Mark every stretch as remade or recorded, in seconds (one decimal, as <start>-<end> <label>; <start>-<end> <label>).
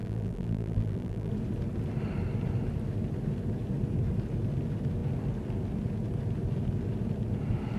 0.0-1.3 remade; 1.3-7.8 recorded